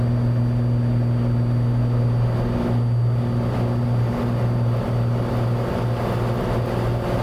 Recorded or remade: recorded